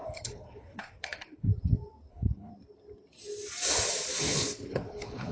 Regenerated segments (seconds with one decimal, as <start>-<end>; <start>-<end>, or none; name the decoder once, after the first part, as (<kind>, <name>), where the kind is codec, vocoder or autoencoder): 0.0-1.5 (codec, HILCodec); 2.1-2.5; 4.2-5.3